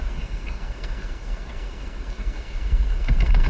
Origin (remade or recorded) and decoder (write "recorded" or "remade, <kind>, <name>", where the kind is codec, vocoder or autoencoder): remade, codec, SNAC